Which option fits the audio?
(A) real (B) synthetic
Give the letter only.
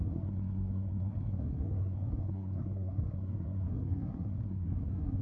B